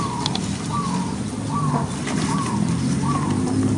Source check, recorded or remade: recorded